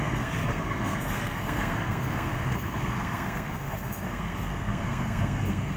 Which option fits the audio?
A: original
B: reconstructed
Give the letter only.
B